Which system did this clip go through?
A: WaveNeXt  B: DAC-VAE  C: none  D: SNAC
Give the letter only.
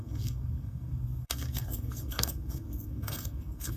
D